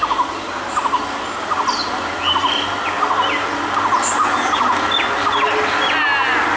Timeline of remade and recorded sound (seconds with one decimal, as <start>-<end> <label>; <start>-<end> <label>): 0.0-6.6 recorded

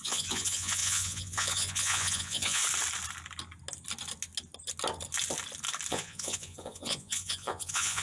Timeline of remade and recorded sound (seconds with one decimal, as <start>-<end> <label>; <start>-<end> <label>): 0.0-2.6 remade; 2.6-5.9 recorded; 5.9-8.0 remade

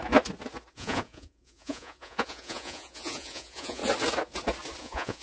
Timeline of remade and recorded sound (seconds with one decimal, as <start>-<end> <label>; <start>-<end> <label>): 0.0-0.7 recorded; 0.7-3.8 remade; 3.8-4.8 recorded; 4.8-5.2 remade

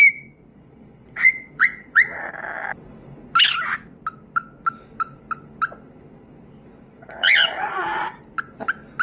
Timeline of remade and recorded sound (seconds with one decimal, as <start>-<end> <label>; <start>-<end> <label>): 0.0-0.5 recorded; 0.5-2.3 remade; 2.3-6.9 recorded; 6.9-8.2 remade; 8.2-9.0 recorded

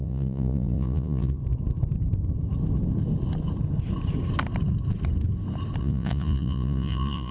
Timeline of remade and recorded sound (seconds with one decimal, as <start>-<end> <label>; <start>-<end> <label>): 0.0-1.4 remade; 1.4-5.8 recorded; 5.8-7.3 remade

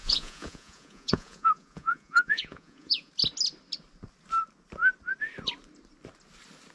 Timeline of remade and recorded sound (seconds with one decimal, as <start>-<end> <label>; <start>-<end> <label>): 0.0-3.1 remade; 3.1-6.7 recorded